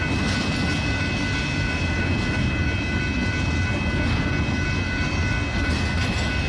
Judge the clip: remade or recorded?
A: recorded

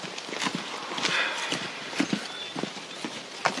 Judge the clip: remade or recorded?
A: recorded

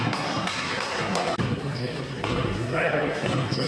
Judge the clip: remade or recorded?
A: remade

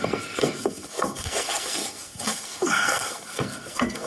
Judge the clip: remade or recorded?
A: remade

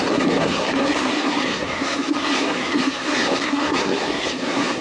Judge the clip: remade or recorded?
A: remade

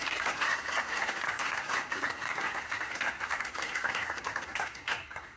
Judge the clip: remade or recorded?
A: remade